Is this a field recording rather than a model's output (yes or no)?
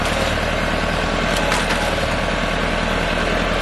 yes